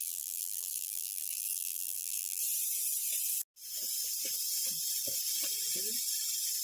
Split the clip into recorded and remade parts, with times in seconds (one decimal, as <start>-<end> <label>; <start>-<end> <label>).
0.0-2.4 remade; 2.4-6.6 recorded